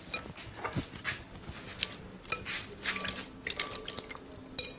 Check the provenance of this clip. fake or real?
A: real